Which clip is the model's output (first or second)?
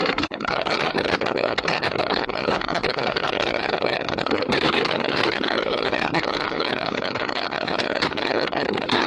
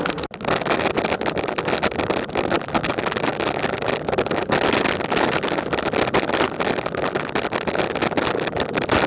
first